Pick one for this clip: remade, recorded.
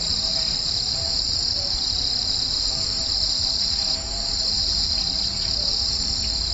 remade